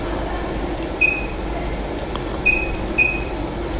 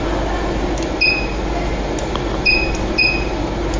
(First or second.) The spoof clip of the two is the first